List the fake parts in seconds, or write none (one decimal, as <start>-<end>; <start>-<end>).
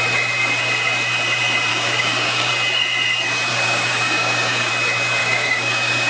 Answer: 1.7-2.5; 3.5-4.7; 5.2-6.1